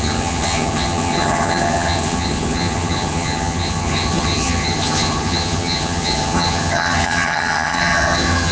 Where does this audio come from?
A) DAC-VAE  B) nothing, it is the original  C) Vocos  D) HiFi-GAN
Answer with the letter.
D